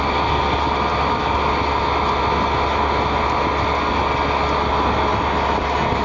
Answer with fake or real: real